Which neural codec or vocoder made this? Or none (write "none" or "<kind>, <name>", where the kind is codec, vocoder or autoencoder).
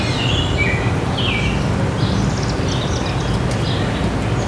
none